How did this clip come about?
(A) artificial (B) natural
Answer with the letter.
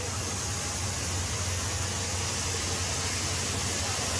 B